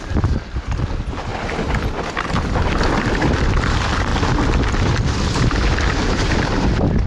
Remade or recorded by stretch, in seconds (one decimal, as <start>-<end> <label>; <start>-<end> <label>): 0.0-1.3 remade; 1.3-2.2 recorded; 2.2-7.1 remade